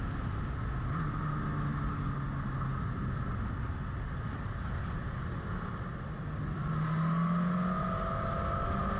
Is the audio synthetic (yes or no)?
no